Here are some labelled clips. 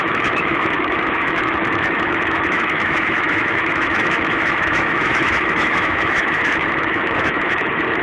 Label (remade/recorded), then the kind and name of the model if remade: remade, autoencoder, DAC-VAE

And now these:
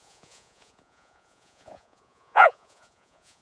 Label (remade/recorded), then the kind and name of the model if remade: remade, vocoder, Vocos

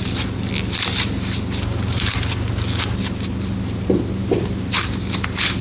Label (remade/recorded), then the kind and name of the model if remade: recorded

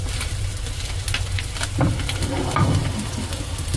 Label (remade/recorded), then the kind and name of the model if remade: recorded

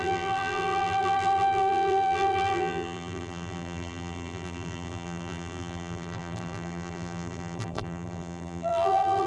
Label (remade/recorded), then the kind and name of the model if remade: remade, vocoder, BigVGAN v2